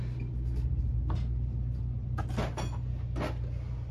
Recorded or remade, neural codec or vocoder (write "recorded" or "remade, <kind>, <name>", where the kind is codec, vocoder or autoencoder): recorded